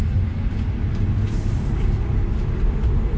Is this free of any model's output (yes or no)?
yes